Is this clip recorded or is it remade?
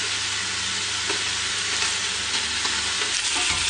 recorded